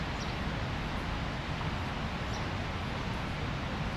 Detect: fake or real real